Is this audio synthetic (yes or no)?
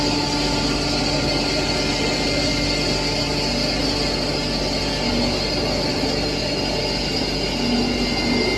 no